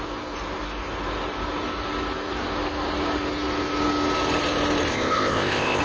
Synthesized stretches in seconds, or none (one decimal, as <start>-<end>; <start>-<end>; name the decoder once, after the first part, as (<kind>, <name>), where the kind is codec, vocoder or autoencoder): 4.9-5.8 (codec, ZipCodec)